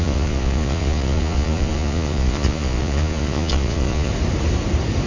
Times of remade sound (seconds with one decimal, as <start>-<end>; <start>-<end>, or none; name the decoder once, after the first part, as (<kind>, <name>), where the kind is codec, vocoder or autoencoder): 0.0-4.1 (vocoder, Vocos)